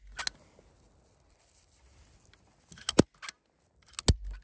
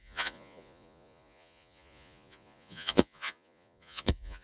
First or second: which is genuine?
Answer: first